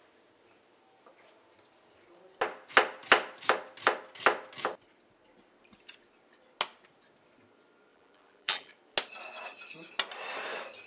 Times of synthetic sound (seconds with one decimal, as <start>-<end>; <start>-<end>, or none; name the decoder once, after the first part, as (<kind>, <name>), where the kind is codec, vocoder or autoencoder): 7.9-8.7 (vocoder, BigVGAN v2)